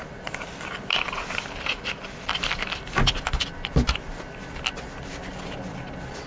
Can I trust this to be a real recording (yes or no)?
no